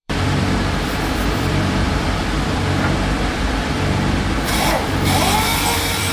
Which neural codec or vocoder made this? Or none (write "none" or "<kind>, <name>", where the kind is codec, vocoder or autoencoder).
vocoder, BigVGAN v2